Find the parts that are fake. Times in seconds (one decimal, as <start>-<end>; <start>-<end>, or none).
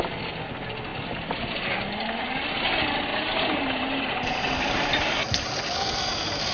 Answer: 0.9-1.5; 3.1-5.6